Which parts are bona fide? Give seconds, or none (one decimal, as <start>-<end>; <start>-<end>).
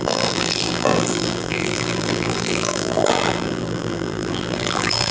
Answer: none